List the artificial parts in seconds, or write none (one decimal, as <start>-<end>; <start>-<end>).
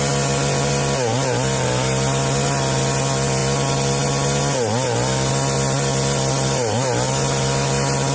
none